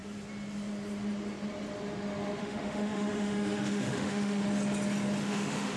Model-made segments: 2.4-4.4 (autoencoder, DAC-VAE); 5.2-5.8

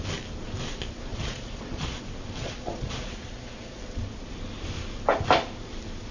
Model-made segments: 1.1-2.0 (vocoder, Vocos); 2.4-3.8

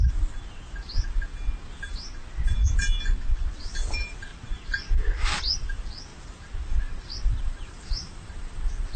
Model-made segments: 4.3-5.4 (vocoder, BigVGAN v2); 6.1-8.6

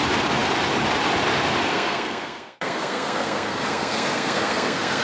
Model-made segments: 1.7-5.0 (codec, SNAC)